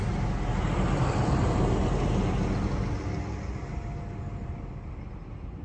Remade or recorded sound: recorded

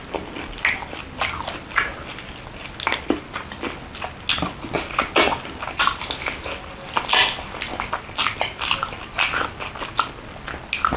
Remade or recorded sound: recorded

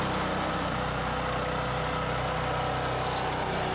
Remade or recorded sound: recorded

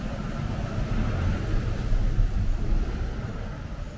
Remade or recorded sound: remade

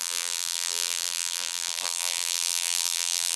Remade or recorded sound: remade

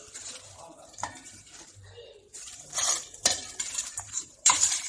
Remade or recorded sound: remade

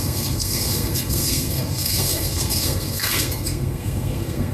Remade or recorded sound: remade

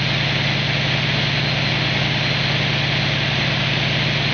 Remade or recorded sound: recorded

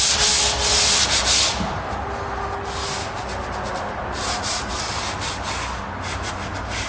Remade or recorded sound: recorded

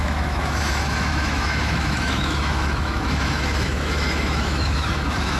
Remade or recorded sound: remade